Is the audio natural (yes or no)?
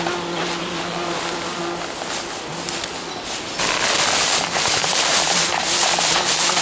yes